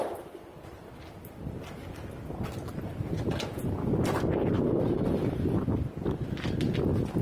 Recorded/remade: recorded